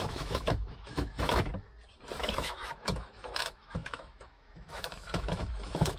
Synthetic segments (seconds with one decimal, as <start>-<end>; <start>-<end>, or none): 0.0-1.5; 2.2-6.0